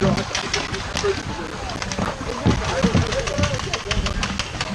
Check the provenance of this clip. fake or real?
real